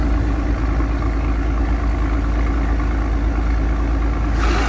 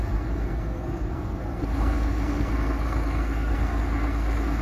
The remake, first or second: second